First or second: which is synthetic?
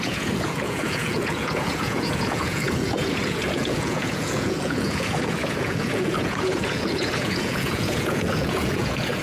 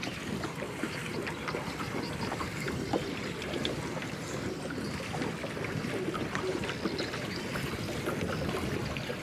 first